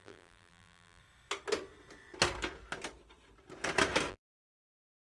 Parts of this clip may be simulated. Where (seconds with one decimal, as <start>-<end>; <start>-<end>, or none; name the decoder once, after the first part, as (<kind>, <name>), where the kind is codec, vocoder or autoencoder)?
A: 0.0-1.0 (vocoder, BigVGAN v2); 4.1-5.1